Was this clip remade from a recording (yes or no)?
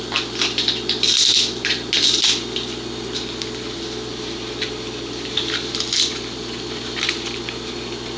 no